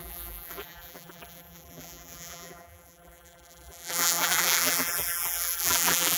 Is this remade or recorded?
remade